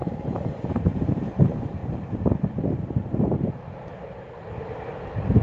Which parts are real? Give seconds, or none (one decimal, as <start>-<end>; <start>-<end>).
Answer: 3.9-5.0

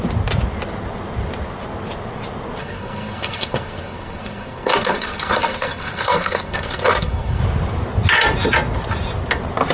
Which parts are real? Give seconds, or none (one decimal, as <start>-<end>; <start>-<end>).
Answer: 0.0-2.6; 7.4-9.7

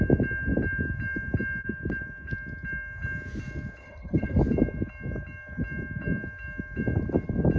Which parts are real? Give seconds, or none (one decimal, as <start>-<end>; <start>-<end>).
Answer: 0.0-3.8; 4.4-7.6

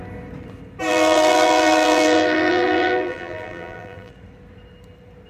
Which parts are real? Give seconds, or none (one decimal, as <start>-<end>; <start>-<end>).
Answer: 0.0-0.9; 4.1-5.3

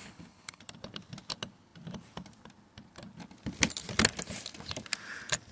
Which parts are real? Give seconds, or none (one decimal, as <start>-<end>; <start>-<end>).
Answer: 0.6-5.5

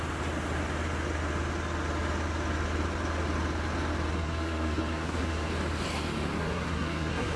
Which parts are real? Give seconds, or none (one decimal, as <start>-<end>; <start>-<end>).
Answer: 0.0-4.1; 5.5-6.4

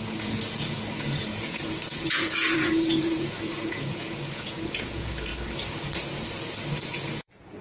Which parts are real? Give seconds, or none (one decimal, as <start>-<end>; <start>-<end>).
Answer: 5.3-6.8